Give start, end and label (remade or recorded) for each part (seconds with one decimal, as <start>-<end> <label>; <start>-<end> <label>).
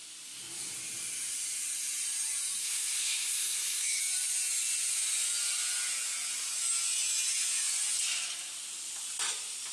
0.0-2.6 recorded; 2.6-4.0 remade; 4.0-9.7 recorded